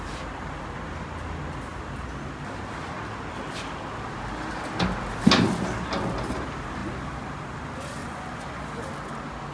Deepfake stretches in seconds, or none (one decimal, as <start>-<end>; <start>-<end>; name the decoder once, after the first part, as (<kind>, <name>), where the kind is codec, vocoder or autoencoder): 8.0-8.6 (vocoder, Vocos)